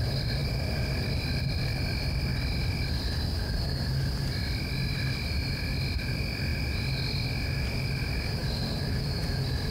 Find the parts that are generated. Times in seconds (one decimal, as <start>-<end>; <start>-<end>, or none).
0.4-1.8; 8.4-9.2